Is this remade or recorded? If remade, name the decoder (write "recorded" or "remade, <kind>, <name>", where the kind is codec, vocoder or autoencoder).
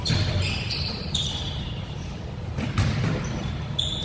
recorded